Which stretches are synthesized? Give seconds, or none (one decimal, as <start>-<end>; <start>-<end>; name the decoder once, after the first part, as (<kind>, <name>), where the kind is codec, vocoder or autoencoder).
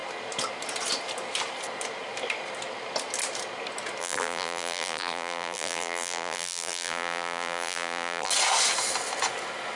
4.0-8.3 (vocoder, BigVGAN v2)